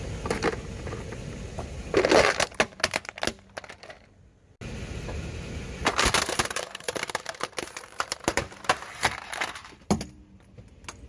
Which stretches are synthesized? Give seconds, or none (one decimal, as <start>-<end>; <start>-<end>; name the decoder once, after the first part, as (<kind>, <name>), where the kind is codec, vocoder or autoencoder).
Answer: 5.8-9.9 (vocoder, BigVGAN v2)